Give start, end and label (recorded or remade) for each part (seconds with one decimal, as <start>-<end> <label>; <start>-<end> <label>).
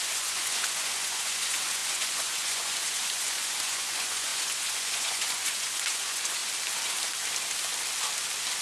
0.0-6.4 remade; 6.4-8.6 recorded